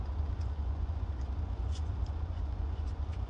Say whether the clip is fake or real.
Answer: fake